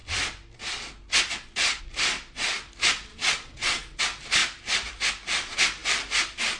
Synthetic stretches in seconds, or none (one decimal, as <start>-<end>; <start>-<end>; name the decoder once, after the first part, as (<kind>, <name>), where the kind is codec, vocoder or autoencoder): 3.1-4.0 (vocoder, WaveNeXt)